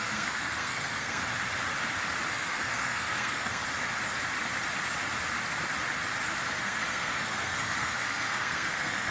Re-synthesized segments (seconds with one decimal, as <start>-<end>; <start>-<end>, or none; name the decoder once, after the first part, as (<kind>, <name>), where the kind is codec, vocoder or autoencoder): 0.0-1.2 (codec, SNAC); 2.3-3.6; 6.6-9.1